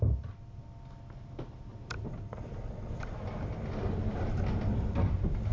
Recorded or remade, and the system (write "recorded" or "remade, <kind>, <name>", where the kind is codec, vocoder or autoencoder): recorded